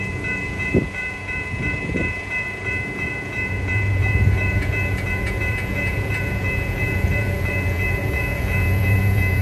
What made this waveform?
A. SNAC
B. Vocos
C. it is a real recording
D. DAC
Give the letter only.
B